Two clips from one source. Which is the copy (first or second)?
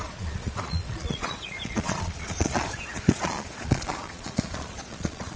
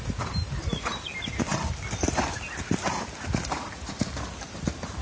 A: first